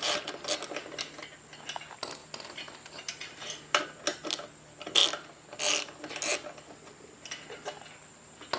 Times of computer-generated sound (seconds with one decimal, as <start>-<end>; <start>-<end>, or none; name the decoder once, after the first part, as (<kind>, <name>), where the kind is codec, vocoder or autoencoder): none